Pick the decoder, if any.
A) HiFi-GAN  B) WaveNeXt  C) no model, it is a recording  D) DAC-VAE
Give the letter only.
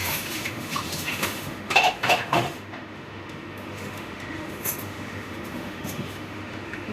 D